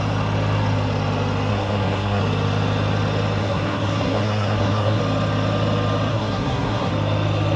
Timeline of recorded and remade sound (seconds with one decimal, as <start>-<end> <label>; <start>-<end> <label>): 0.0-1.5 recorded; 1.5-2.2 remade; 2.2-3.4 recorded; 3.4-5.0 remade; 5.0-6.1 recorded; 6.1-6.9 remade; 6.9-7.6 recorded